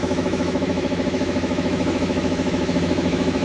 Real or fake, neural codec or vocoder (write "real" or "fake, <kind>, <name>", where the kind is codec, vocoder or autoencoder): fake, autoencoder, DAC-VAE